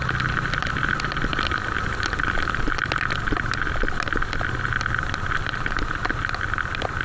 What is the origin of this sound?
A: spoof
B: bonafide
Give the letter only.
B